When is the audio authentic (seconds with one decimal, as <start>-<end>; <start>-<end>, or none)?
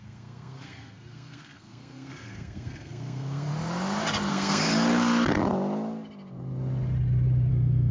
3.5-4.3; 4.7-7.5